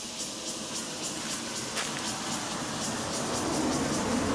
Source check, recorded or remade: recorded